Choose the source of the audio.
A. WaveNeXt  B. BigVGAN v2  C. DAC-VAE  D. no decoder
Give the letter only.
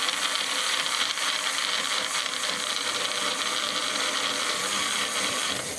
B